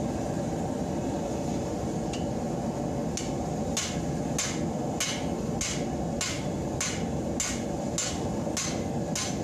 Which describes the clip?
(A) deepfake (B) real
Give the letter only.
B